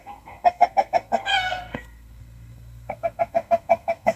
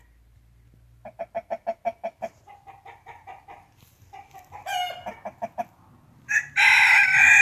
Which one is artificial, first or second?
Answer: first